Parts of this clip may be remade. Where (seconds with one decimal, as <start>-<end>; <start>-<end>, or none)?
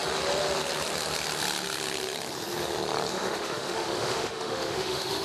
3.1-5.2